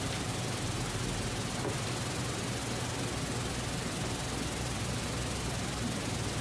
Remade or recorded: recorded